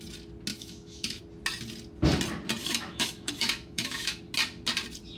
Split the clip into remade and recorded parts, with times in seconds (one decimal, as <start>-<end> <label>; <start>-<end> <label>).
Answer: 0.0-0.5 recorded; 0.5-1.2 remade; 1.2-2.6 recorded; 2.6-4.2 remade; 4.2-5.2 recorded